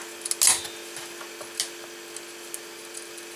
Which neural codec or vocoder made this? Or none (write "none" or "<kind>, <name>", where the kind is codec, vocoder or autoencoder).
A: none